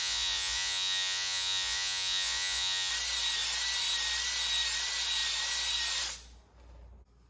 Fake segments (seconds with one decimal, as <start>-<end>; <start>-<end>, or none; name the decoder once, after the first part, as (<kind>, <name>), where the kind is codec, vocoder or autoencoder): 0.0-2.9 (vocoder, Vocos)